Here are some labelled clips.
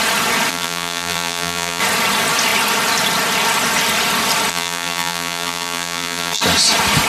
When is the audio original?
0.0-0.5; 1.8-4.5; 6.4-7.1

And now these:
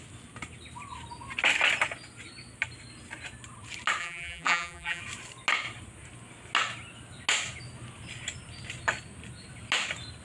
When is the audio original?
0.0-4.0; 5.0-10.2

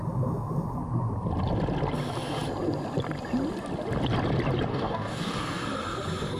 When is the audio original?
0.0-4.7; 5.4-6.4

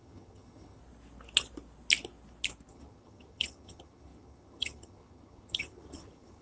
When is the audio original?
0.8-2.7

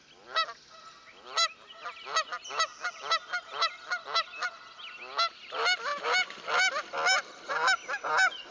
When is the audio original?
0.0-8.5